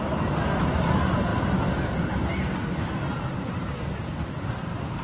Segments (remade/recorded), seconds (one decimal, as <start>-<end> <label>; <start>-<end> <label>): 0.0-5.0 recorded